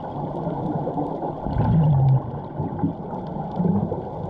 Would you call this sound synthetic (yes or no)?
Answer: no